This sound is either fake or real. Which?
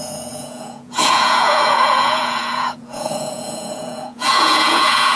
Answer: fake